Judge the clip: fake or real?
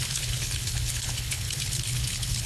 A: fake